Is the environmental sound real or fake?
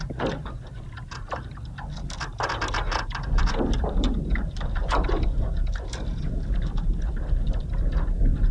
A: real